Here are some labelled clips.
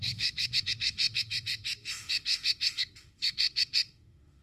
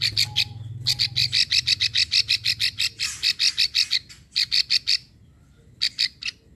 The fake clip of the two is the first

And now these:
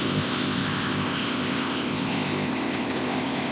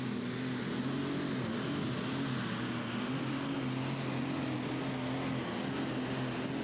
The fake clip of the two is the first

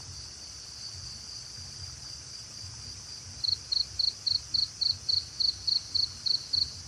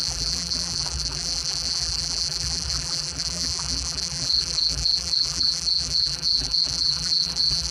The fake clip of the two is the second